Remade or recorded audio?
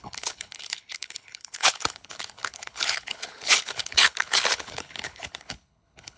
remade